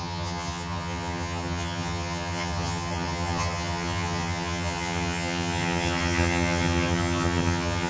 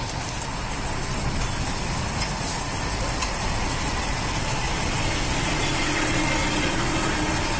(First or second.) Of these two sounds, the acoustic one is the second